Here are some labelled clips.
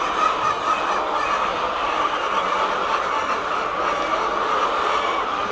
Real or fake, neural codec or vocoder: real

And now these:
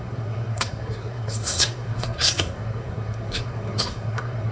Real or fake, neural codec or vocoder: fake, codec, SNAC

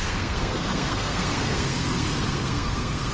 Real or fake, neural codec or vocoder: fake, codec, SNAC